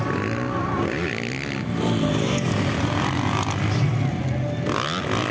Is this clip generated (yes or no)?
no